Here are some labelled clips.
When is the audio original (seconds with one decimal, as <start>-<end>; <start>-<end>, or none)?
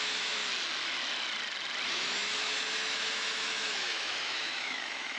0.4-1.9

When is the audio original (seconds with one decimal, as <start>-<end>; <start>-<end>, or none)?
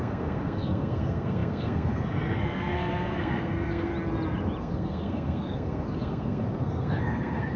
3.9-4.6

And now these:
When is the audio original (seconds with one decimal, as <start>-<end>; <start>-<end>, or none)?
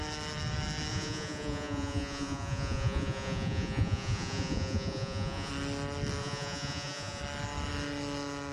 0.0-0.9; 5.5-6.2; 7.2-8.5